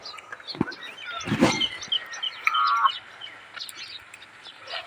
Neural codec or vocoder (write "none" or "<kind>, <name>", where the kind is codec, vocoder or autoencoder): none